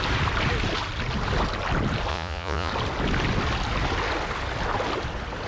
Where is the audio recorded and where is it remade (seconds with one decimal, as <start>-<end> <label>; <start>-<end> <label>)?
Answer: 0.0-2.1 recorded; 2.1-2.7 remade; 2.7-5.5 recorded